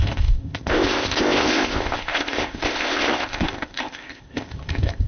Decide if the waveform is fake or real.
fake